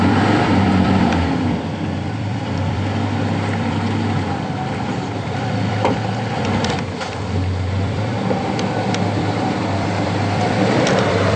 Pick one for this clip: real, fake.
fake